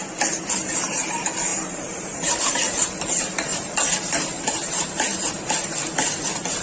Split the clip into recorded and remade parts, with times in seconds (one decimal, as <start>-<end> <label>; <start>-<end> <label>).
0.0-1.5 recorded; 1.5-2.3 remade; 2.3-3.5 recorded; 3.5-5.3 remade; 5.3-6.6 recorded